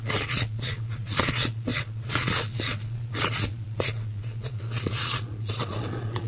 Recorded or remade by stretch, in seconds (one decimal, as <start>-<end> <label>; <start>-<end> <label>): 0.0-6.3 remade

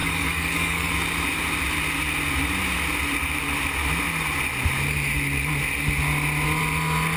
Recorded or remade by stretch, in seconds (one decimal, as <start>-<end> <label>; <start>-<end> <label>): 0.0-0.9 remade; 0.9-7.2 recorded